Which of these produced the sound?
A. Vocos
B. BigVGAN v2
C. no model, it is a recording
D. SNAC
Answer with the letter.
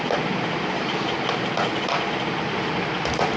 C